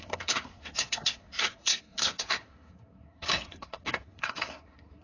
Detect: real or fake fake